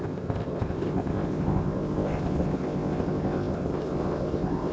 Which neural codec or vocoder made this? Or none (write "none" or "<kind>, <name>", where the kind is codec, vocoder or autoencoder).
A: codec, ZipCodec